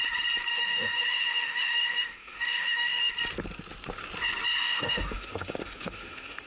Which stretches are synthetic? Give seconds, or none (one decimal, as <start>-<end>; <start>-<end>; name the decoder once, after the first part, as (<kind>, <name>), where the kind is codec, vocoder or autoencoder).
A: 0.5-3.1 (autoencoder, DAC-VAE); 4.6-6.5